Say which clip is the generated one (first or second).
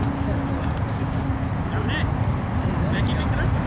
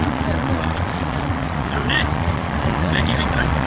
second